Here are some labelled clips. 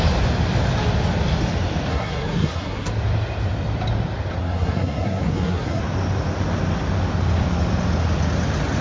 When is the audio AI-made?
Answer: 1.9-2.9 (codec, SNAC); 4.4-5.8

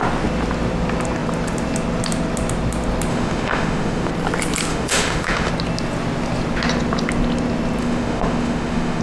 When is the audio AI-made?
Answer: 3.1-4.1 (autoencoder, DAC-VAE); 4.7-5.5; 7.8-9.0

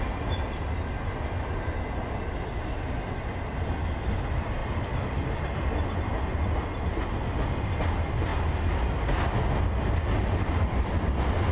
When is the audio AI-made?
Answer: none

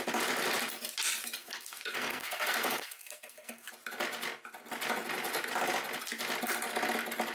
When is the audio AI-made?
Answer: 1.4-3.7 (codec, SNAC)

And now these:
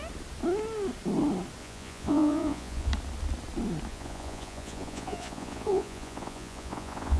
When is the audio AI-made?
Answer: 1.6-2.9 (vocoder, Vocos); 3.9-7.2

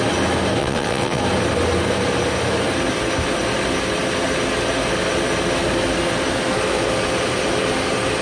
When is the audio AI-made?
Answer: 0.6-1.2 (vocoder, WaveNeXt)